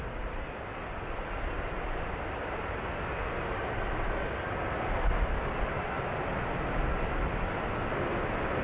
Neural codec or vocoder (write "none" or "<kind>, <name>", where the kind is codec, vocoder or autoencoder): none